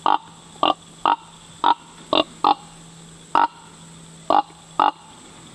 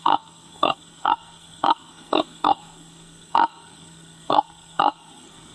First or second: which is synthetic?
second